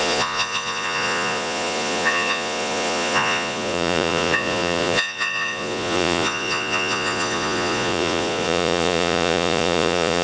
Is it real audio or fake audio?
fake